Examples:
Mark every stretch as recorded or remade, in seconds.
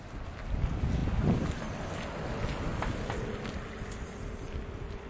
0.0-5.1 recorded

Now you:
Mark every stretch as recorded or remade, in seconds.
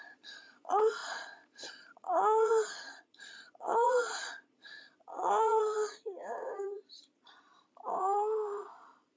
0.0-7.5 remade; 7.5-8.0 recorded; 8.0-9.2 remade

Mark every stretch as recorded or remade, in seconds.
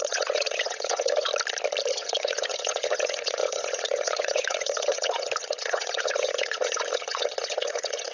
0.0-1.3 remade; 1.3-1.9 recorded; 1.9-8.1 remade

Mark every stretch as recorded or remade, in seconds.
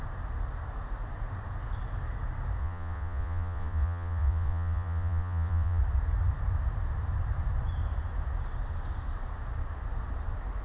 0.0-2.6 recorded; 2.6-5.8 remade; 5.8-10.6 recorded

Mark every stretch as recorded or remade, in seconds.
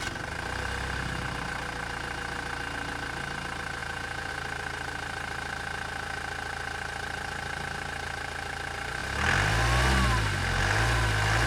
0.0-3.8 recorded; 3.8-4.3 remade; 4.3-11.5 recorded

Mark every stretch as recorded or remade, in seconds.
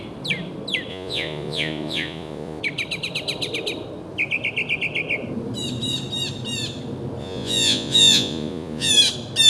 0.0-0.9 recorded; 0.9-2.6 remade; 2.6-7.2 recorded; 7.2-8.9 remade; 8.9-9.5 recorded